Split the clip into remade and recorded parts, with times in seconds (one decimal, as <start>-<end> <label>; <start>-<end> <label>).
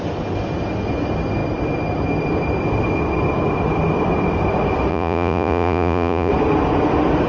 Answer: 0.0-4.9 recorded; 4.9-6.3 remade; 6.3-7.3 recorded